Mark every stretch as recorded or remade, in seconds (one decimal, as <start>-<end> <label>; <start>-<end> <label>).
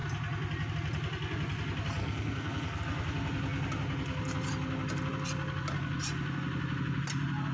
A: 0.0-2.0 recorded; 2.0-2.8 remade; 2.8-7.5 recorded